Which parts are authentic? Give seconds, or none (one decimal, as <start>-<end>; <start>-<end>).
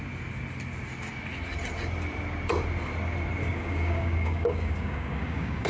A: 0.0-3.4